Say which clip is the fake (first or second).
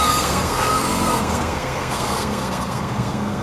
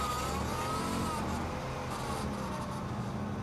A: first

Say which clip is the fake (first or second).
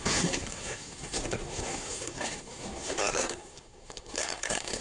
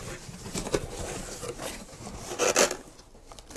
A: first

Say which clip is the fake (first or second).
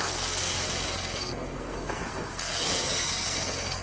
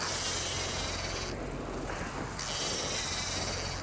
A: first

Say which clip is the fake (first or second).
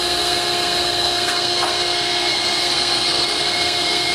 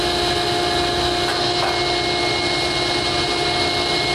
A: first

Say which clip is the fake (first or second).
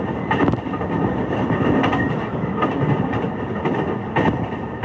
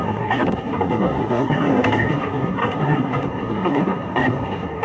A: second